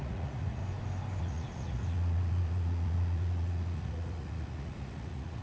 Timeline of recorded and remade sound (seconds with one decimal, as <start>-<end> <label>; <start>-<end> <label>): 0.0-0.6 remade; 0.6-1.2 recorded; 1.2-5.4 remade